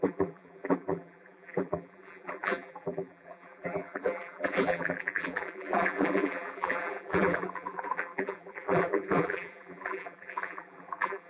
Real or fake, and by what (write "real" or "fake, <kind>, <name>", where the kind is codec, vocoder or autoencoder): fake, vocoder, BigVGAN v2